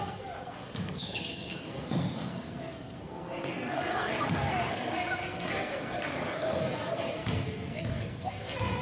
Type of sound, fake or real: fake